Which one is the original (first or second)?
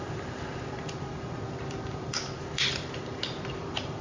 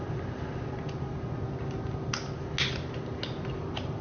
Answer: second